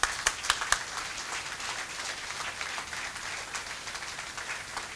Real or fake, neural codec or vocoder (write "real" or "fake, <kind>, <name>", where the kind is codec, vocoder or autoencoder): real